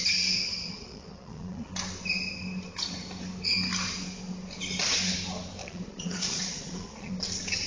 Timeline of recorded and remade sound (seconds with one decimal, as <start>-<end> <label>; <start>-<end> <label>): 0.0-0.5 recorded; 0.5-1.7 remade; 1.7-5.6 recorded; 5.6-7.1 remade; 7.1-7.7 recorded